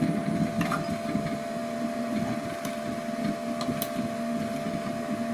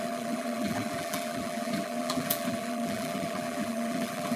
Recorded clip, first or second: first